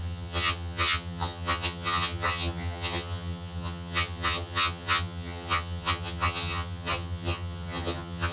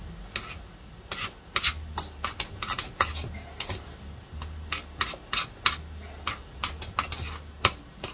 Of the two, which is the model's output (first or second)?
first